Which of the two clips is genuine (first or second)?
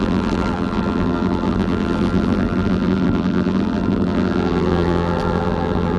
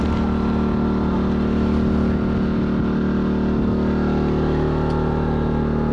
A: second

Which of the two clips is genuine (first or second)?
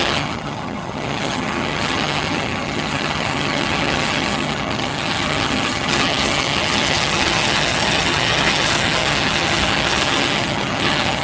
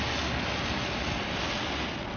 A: second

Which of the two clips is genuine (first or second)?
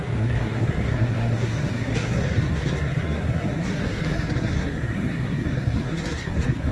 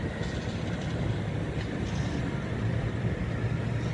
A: second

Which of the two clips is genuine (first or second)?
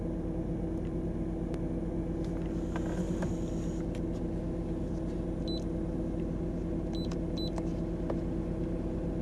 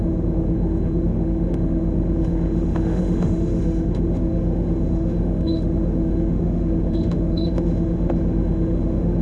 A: first